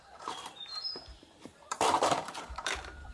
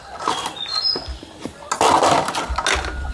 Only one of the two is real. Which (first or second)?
second